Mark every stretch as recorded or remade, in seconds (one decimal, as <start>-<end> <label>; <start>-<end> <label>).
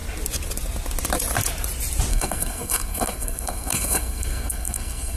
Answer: 0.0-2.1 recorded; 2.1-5.2 remade